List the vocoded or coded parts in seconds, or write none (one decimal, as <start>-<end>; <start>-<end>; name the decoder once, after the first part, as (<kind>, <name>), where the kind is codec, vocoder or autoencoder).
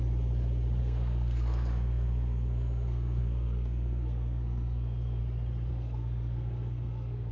0.8-5.2 (codec, SNAC); 5.7-7.3